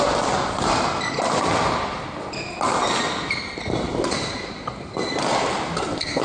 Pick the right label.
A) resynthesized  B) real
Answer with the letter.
B